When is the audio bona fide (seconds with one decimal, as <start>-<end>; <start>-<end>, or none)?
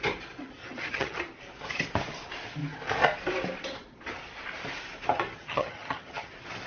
0.0-0.6; 1.2-5.3; 6.3-6.7